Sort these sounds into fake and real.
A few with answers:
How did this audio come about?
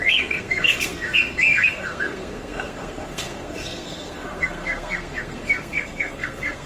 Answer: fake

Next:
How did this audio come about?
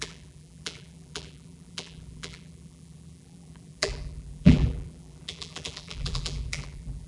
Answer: fake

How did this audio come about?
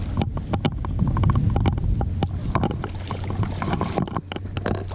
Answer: real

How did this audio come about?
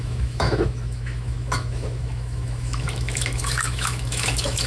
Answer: fake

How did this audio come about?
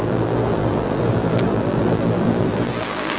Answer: fake